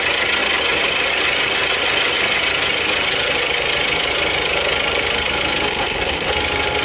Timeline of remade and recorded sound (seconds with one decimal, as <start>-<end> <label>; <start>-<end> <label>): 0.0-5.7 recorded; 5.7-6.3 remade; 6.3-6.8 recorded